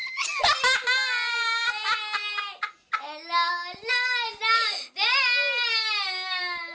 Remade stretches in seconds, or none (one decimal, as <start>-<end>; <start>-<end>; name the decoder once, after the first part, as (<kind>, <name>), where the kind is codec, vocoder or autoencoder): none